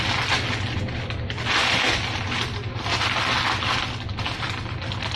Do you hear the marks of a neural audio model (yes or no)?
no